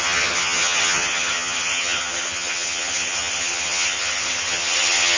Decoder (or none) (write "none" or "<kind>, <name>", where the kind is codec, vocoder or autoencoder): vocoder, HiFi-GAN